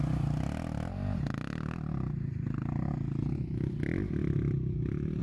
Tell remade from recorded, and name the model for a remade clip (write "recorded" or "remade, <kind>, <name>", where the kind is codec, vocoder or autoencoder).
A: recorded